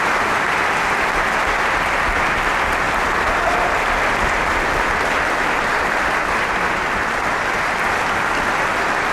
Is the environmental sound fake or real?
real